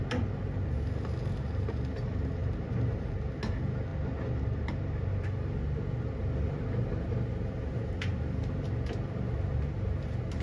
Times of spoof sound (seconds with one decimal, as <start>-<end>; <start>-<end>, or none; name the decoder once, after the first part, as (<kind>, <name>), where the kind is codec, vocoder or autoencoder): 2.4-3.1 (vocoder, BigVGAN v2); 6.8-8.4